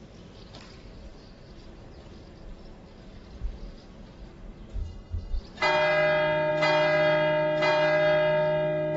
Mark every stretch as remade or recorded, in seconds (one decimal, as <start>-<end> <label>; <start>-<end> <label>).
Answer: 0.0-4.8 recorded; 4.8-5.4 remade; 5.4-9.0 recorded